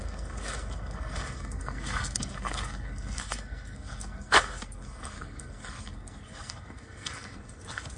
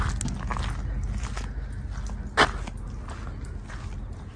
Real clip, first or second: second